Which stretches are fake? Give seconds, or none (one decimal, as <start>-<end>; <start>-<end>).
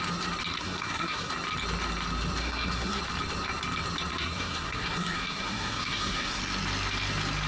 0.5-1.3; 2.4-3.0; 4.1-6.4